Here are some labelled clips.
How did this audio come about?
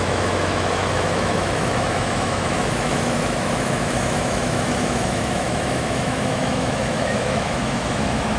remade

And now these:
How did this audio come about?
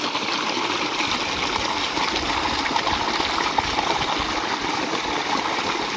recorded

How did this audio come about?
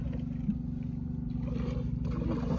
recorded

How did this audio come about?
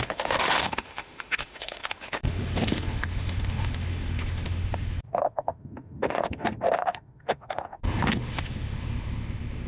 remade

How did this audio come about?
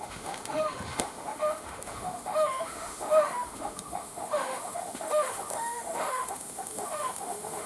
remade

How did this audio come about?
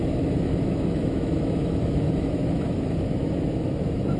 remade